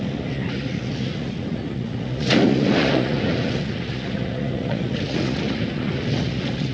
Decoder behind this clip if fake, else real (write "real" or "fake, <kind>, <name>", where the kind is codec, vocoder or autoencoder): fake, vocoder, Vocos